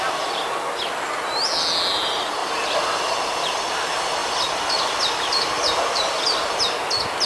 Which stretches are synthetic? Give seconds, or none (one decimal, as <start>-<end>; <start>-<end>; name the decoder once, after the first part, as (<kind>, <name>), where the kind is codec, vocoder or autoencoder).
none